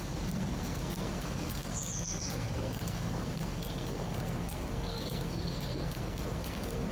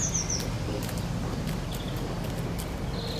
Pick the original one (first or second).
second